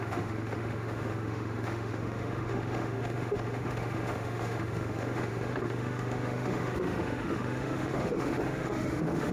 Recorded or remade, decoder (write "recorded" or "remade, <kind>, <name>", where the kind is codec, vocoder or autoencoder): remade, autoencoder, DAC-VAE